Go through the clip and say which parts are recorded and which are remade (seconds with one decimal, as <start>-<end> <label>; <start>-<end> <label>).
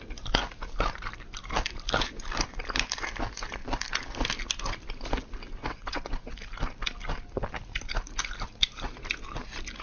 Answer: 0.0-5.6 recorded; 5.6-6.3 remade; 6.3-9.8 recorded